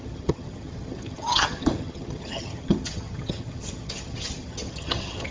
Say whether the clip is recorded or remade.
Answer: remade